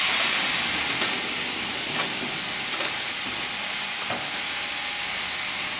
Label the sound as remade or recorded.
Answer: recorded